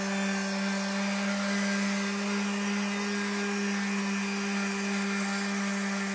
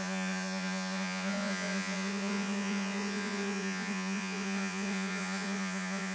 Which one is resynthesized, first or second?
second